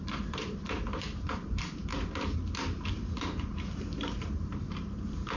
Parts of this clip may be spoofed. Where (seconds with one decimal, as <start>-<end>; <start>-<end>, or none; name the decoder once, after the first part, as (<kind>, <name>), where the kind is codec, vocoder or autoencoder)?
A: 0.0-1.9 (vocoder, BigVGAN v2); 2.9-5.4